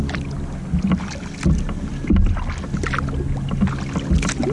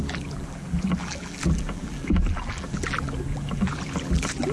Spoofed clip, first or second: second